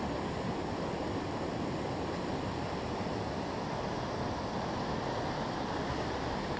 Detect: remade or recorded recorded